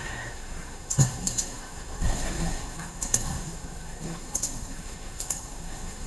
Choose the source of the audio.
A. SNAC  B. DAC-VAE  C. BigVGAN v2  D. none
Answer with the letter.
A